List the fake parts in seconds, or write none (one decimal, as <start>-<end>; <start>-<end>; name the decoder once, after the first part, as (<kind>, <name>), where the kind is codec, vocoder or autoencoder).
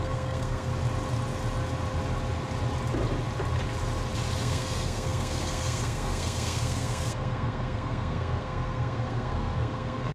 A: 0.0-0.7 (codec, SNAC); 4.4-10.1